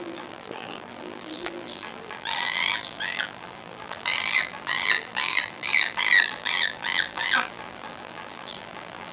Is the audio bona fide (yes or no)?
no